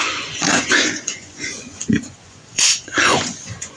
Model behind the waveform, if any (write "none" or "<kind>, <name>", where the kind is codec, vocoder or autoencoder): vocoder, Vocos